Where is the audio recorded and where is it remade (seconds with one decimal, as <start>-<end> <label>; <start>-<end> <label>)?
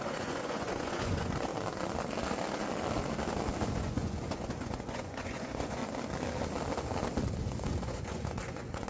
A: 0.0-1.5 remade; 1.5-3.7 recorded; 3.7-5.8 remade; 5.8-7.4 recorded; 7.4-8.9 remade